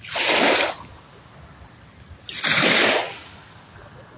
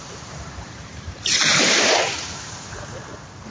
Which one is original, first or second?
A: first